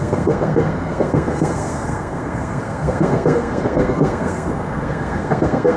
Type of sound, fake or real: fake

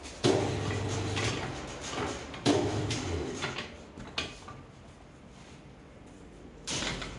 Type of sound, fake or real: real